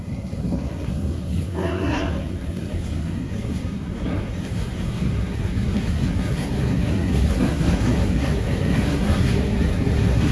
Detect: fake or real fake